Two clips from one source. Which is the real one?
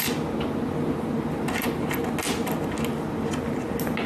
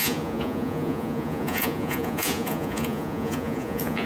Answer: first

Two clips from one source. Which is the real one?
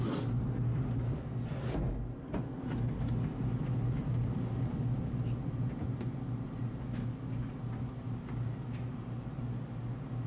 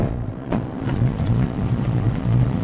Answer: first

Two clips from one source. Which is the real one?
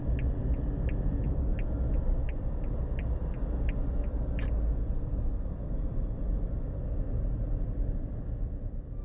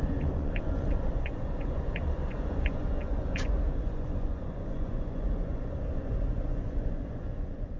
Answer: first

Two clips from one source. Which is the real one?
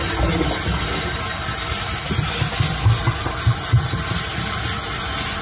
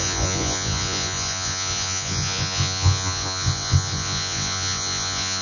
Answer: first